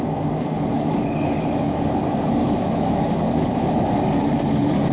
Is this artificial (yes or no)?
yes